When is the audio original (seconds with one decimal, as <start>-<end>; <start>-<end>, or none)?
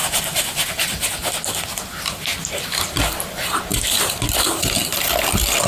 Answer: 1.8-3.7; 4.8-5.7